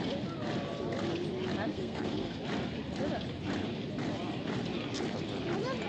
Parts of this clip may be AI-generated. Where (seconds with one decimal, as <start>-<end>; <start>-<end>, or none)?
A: 1.7-2.4